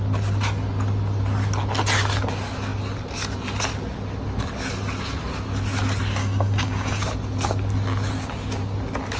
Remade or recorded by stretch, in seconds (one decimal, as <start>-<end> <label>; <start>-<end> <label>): 0.0-6.2 recorded; 6.2-7.0 remade; 7.0-9.2 recorded

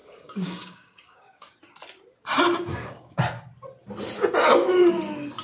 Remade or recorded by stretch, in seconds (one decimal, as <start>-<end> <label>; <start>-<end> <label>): 0.0-1.6 remade; 1.6-2.7 recorded; 2.7-3.2 remade; 3.2-5.4 recorded

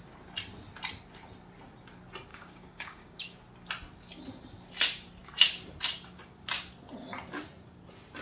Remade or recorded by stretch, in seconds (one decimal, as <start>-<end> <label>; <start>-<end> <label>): 0.0-2.3 recorded; 2.3-3.4 remade; 3.4-8.2 recorded

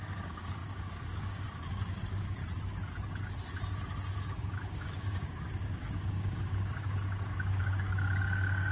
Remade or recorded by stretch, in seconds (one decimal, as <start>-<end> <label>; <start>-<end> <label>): 0.0-2.4 remade; 2.4-4.4 recorded; 4.4-8.7 remade

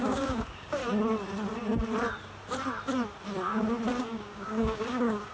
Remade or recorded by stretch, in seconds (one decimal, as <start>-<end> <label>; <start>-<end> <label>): 0.0-0.8 remade; 0.8-4.0 recorded; 4.0-5.3 remade

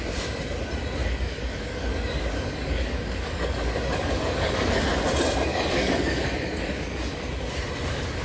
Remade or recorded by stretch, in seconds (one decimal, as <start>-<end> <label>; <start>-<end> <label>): 0.0-1.0 recorded; 1.0-4.8 remade; 4.8-5.5 recorded; 5.5-7.3 remade; 7.3-8.2 recorded